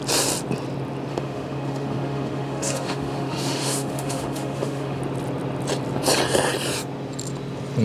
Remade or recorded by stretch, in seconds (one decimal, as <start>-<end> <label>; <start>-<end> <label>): 0.0-1.1 recorded; 1.1-5.0 remade; 5.0-7.8 recorded